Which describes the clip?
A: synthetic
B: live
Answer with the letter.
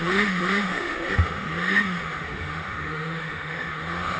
A